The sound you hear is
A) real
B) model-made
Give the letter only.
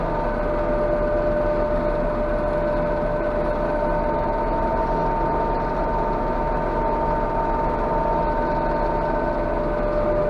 A